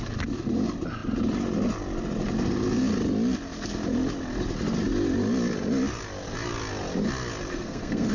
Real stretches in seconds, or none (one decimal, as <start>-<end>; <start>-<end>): 0.0-7.5